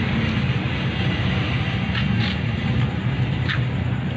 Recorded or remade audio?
recorded